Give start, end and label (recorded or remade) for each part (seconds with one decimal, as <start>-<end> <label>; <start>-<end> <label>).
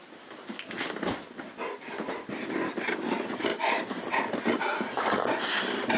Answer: 0.0-3.5 recorded; 3.5-4.0 remade; 4.0-6.0 recorded